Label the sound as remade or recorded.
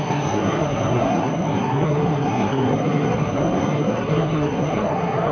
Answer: remade